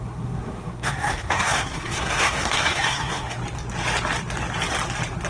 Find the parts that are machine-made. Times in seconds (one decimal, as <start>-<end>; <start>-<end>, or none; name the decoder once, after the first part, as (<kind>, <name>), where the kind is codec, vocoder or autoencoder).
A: 0.0-3.4 (codec, SNAC)